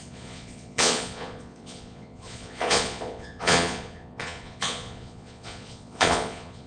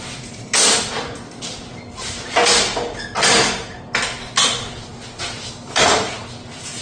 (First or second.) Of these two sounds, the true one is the second